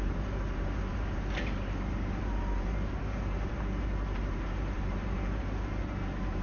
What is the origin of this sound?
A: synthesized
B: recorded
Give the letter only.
A